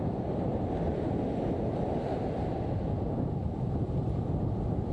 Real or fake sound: real